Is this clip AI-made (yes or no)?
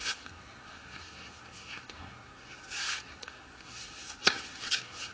yes